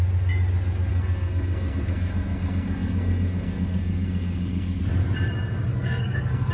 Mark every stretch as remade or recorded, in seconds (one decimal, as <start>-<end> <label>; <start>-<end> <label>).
0.0-0.9 recorded; 0.9-4.8 remade; 4.8-5.7 recorded; 5.7-6.5 remade